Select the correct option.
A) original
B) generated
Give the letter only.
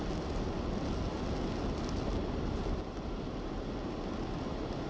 A